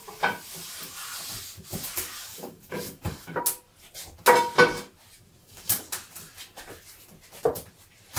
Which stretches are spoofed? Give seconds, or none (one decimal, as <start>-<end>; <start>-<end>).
2.3-3.4; 5.4-5.9